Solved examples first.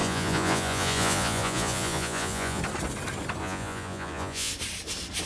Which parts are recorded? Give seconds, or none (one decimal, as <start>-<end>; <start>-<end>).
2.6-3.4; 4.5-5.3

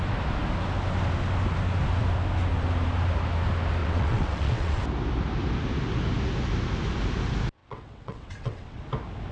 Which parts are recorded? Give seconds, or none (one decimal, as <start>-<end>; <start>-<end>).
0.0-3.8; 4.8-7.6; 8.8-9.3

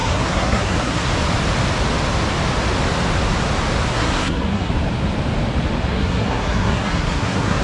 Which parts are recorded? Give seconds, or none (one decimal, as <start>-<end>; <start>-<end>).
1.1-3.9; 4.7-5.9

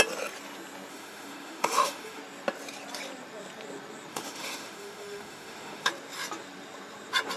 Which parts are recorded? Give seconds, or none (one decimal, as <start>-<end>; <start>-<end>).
0.0-0.9; 2.2-4.1; 5.9-7.4